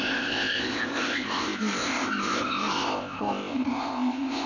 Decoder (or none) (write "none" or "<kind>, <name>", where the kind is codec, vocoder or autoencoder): codec, ZipCodec